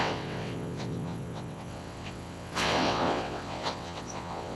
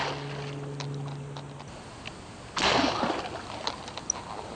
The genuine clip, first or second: second